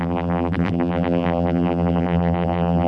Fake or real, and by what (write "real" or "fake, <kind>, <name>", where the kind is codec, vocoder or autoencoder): fake, vocoder, BigVGAN v2